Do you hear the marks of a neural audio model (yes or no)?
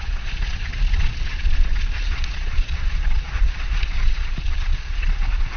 yes